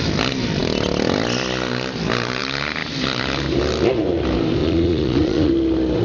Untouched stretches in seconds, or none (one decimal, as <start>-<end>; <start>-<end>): 0.0-4.6; 5.5-6.0